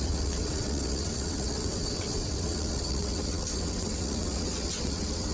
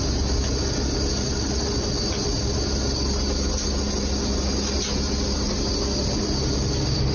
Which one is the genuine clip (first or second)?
second